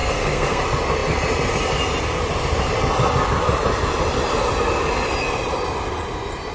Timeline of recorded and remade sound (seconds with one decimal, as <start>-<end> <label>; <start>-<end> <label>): 0.0-0.6 remade; 0.6-6.5 recorded